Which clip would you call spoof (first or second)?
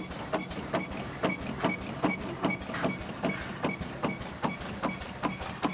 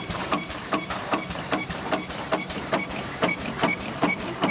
second